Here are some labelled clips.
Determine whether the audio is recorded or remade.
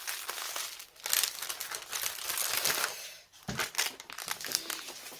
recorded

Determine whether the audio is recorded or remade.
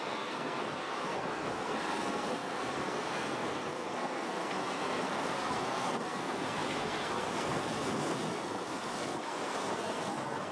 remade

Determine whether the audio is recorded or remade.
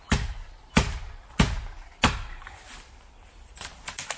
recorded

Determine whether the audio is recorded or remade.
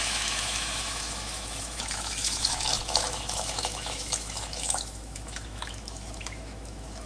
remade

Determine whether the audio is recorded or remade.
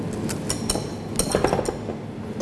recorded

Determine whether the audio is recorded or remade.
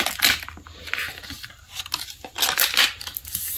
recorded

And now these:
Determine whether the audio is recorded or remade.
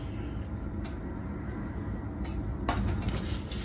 recorded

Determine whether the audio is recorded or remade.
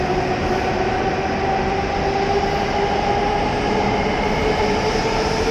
recorded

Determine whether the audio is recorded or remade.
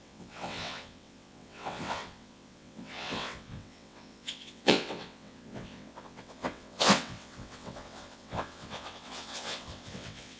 remade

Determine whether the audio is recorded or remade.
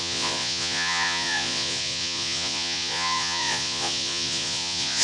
remade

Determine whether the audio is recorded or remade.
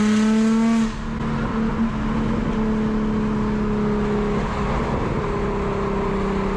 recorded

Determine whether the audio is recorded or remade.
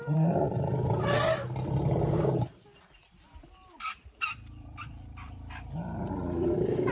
remade